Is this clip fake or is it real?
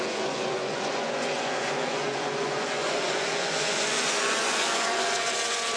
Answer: fake